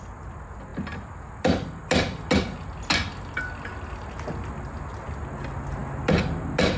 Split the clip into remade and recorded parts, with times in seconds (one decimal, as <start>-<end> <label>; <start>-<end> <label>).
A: 0.0-6.8 recorded